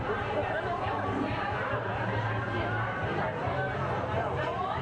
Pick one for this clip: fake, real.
fake